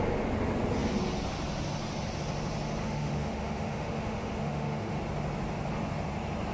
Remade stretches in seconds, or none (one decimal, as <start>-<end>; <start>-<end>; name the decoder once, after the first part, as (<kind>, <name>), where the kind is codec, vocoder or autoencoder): 2.8-5.0 (autoencoder, DAC-VAE)